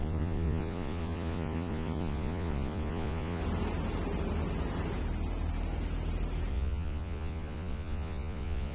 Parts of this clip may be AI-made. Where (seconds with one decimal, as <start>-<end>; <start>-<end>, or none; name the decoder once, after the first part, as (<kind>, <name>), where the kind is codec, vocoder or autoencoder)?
0.0-3.4 (vocoder, Vocos); 6.5-8.7